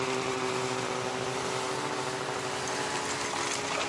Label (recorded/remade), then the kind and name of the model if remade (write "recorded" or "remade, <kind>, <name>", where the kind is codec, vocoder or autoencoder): recorded